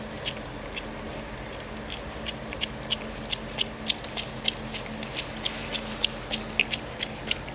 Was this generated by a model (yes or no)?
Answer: no